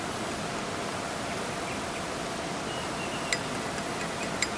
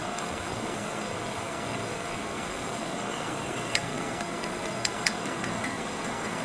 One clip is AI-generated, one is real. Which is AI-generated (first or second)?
second